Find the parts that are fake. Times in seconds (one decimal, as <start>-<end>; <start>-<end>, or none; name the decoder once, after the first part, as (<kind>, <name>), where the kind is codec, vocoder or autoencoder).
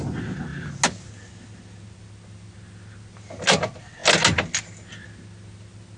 none